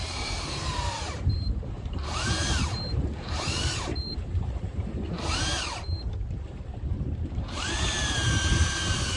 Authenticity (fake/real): fake